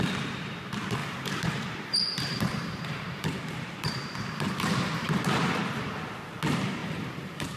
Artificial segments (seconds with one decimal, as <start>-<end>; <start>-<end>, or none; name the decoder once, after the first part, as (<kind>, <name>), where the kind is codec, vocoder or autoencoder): 1.0-5.6 (vocoder, BigVGAN v2); 6.8-7.6